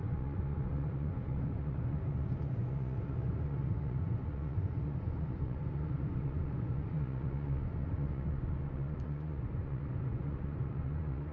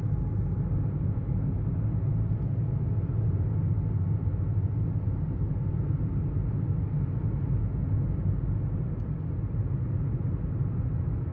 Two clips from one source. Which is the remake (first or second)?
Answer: first